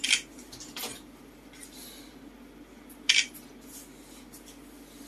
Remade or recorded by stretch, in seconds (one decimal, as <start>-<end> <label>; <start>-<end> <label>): 0.0-0.8 recorded; 0.8-2.1 remade; 2.1-5.1 recorded